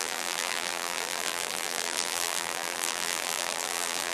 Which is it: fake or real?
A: fake